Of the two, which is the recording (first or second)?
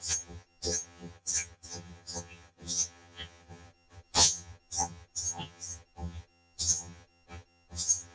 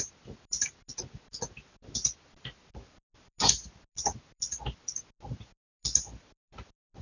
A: second